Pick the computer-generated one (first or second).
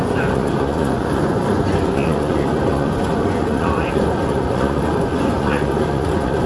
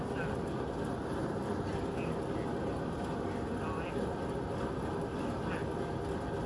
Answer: first